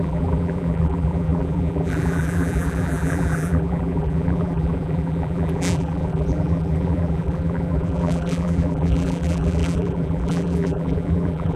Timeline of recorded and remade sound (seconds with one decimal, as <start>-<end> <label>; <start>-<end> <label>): 0.0-11.6 remade